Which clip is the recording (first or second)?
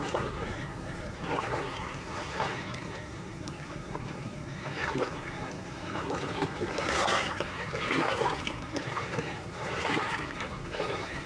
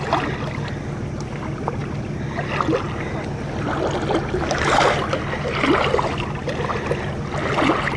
second